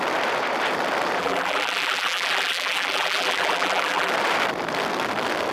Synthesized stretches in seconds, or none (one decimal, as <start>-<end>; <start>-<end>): 1.2-4.1